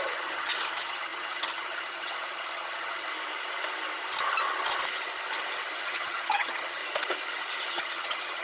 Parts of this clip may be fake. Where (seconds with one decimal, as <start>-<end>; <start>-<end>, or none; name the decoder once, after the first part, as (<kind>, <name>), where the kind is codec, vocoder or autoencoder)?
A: 0.0-3.1 (vocoder, HiFi-GAN); 5.8-6.8; 7.7-8.4